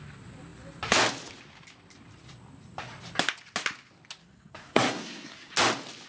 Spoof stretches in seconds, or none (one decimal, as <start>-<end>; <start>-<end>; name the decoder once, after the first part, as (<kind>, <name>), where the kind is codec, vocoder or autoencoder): 4.2-5.5 (codec, SNAC)